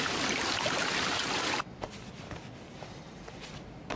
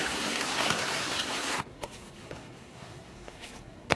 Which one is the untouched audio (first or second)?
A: first